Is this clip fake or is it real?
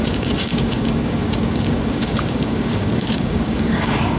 fake